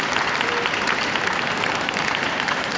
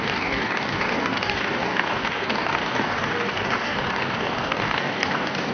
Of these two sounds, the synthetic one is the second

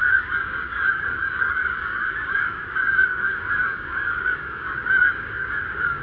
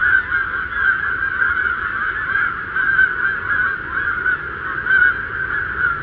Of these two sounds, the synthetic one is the first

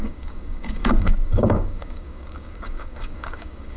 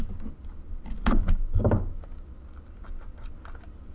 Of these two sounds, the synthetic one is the first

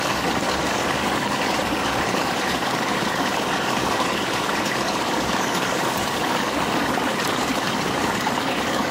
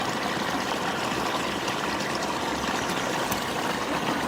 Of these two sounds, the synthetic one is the first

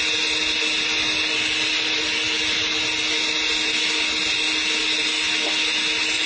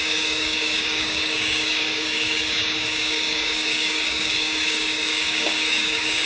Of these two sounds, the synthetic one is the second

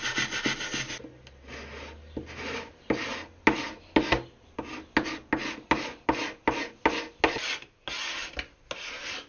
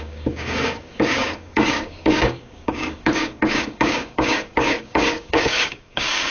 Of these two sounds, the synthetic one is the second